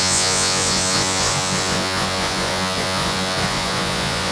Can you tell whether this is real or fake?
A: fake